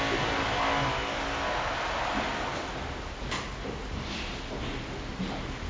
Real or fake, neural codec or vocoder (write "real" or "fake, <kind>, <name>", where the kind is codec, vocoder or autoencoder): real